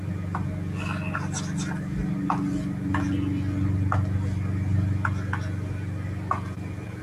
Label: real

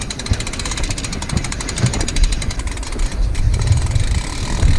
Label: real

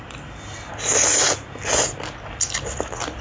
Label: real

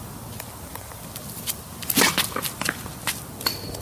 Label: real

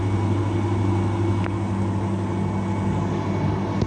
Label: real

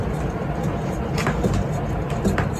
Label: real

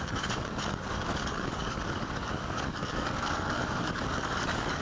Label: fake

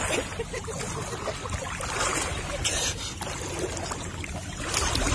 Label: real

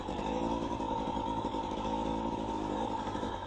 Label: fake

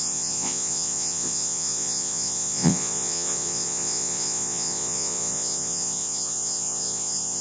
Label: fake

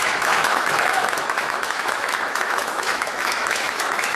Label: fake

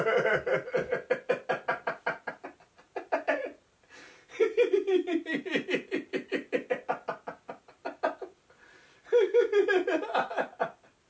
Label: real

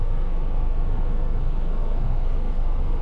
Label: fake